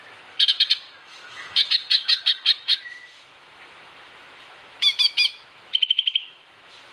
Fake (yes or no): yes